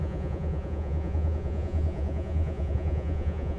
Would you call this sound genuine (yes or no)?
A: no